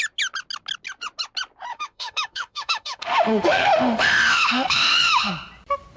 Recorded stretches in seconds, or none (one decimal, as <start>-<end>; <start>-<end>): 0.0-1.7; 5.3-6.0